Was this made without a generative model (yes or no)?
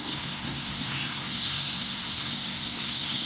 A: no